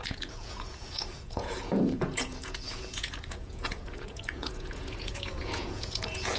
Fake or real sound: fake